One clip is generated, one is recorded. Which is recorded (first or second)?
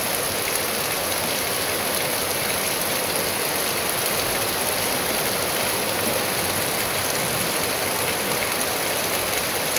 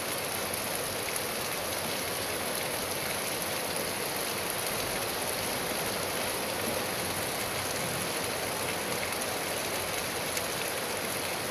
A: second